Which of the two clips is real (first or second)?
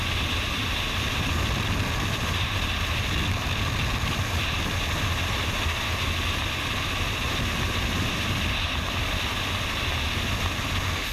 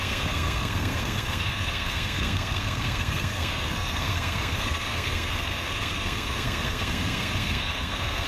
first